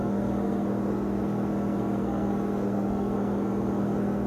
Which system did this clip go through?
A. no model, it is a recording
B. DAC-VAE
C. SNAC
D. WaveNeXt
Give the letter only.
C